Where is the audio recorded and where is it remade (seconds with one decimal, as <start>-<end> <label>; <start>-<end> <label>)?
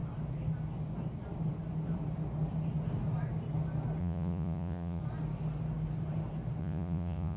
0.0-4.0 recorded; 4.0-5.0 remade; 5.0-6.6 recorded; 6.6-7.4 remade